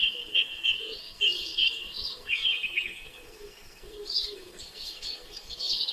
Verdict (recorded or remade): remade